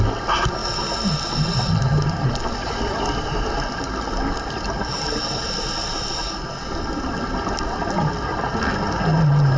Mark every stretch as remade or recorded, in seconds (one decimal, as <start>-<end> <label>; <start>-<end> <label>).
0.0-9.6 recorded